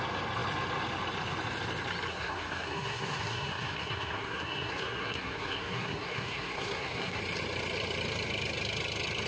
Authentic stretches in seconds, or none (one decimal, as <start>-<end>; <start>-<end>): 0.0-2.1; 7.2-9.3